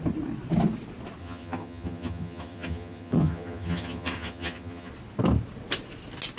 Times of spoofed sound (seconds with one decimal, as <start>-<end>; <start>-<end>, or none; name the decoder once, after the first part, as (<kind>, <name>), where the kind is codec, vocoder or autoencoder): 1.2-4.9 (vocoder, HiFi-GAN)